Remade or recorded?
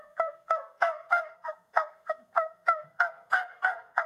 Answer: remade